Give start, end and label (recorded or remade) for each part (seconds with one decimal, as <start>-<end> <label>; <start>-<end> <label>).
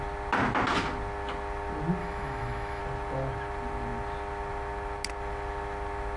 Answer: 0.0-2.0 recorded; 2.0-2.8 remade; 2.8-6.2 recorded